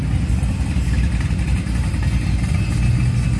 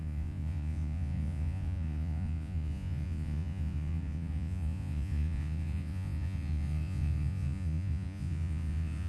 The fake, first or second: second